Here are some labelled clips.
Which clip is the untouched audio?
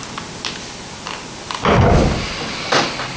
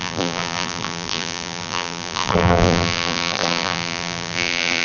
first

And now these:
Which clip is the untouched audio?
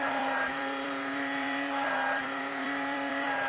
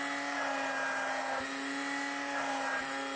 second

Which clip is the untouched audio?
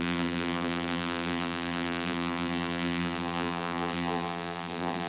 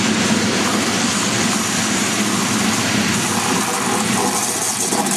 second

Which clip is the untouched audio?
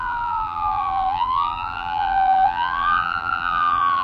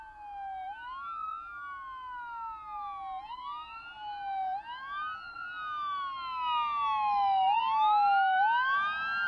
second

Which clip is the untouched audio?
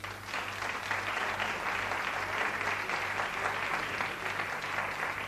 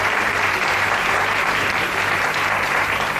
first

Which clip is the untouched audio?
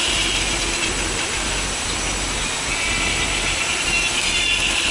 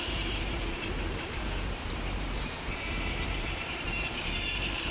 first